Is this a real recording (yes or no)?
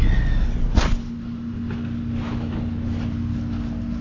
yes